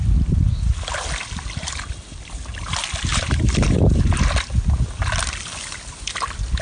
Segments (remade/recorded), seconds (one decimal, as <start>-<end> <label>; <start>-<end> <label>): 0.0-3.1 recorded; 3.1-4.0 remade; 4.0-6.6 recorded